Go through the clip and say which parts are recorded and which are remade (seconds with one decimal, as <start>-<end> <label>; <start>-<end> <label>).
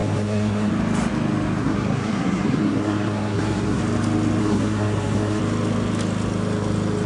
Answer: 0.0-0.7 remade; 0.7-1.6 recorded; 1.6-3.8 remade; 3.8-4.4 recorded; 4.4-5.4 remade; 5.4-7.1 recorded